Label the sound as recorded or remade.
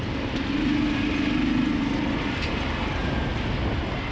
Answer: recorded